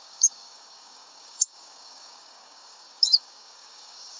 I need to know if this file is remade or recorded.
remade